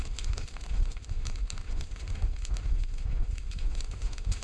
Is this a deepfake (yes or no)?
yes